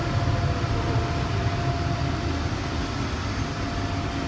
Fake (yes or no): no